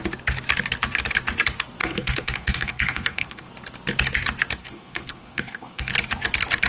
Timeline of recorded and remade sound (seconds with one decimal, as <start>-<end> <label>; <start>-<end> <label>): 0.0-1.8 recorded; 1.8-3.5 remade; 3.5-4.6 recorded; 4.6-5.9 remade; 5.9-6.7 recorded